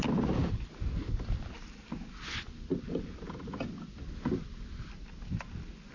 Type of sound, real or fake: real